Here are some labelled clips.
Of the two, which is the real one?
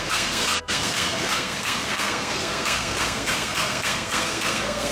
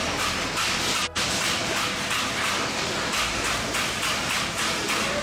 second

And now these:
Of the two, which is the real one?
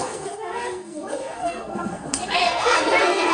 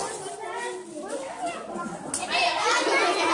second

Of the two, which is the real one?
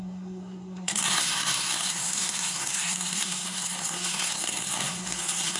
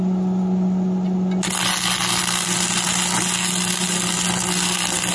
second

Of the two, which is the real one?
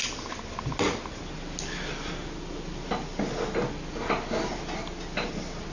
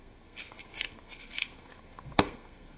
first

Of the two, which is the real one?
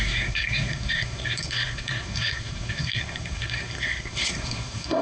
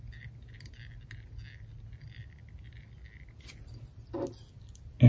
second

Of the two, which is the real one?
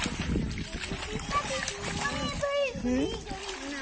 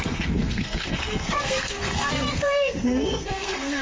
first